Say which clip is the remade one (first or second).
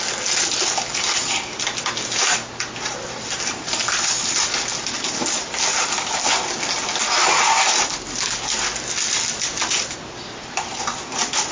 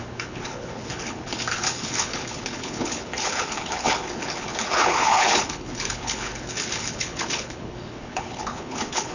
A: second